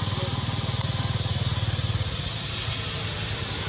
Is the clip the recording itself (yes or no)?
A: yes